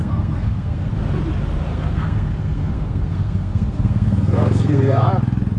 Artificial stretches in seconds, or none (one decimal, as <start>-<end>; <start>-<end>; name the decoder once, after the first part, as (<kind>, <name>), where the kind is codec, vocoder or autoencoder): 0.0-0.9 (codec, SNAC); 1.7-5.1